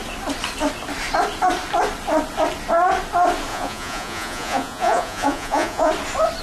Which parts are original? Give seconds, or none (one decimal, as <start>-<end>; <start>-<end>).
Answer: 0.0-3.5; 5.9-6.4